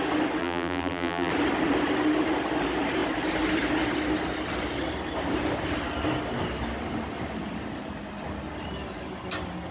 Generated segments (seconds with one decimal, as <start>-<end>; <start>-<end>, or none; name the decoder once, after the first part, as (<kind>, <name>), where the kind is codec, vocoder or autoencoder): 0.4-1.3 (vocoder, BigVGAN v2)